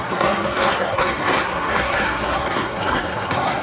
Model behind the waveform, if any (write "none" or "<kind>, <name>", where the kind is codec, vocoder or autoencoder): codec, SNAC